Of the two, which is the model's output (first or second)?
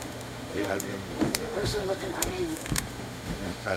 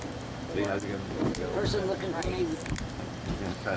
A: first